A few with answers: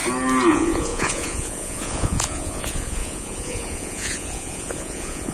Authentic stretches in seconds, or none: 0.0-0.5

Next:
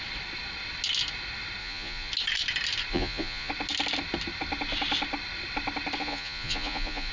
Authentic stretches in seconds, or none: 0.0-1.6; 2.1-2.9; 3.5-6.0